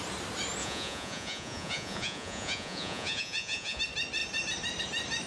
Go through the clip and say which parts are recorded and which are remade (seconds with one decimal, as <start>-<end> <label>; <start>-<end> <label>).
0.0-0.6 recorded; 0.6-3.8 remade; 3.8-5.3 recorded